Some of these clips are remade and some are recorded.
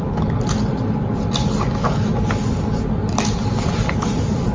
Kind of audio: recorded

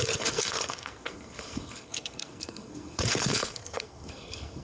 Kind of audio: remade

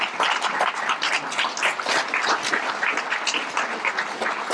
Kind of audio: recorded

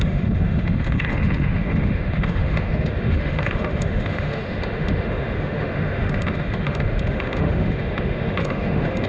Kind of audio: remade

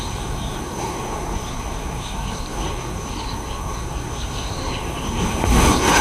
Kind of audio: remade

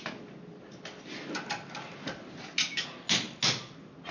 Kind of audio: recorded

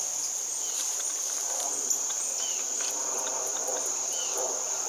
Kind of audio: remade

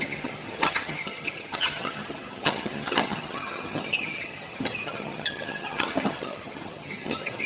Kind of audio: remade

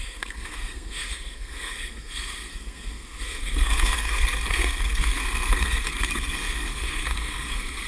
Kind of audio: remade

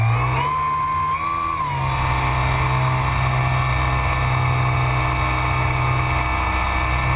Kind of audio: recorded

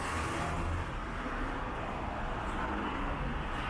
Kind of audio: recorded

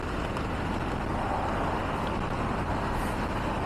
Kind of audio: recorded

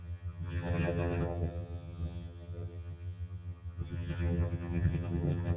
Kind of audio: remade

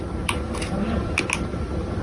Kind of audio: recorded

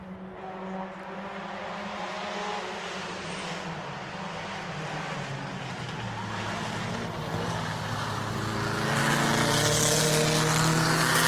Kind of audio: recorded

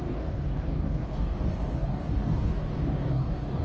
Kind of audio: remade